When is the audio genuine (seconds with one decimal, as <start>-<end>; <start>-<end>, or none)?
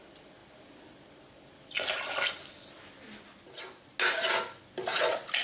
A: 0.0-5.4